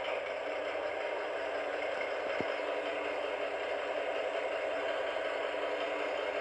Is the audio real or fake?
real